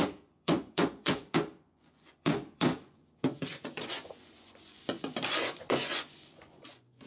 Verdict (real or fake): fake